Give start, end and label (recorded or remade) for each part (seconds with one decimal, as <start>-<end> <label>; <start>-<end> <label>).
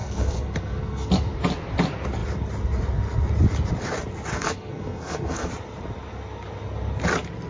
0.0-1.1 remade; 1.1-4.3 recorded; 4.3-5.5 remade; 5.5-7.5 recorded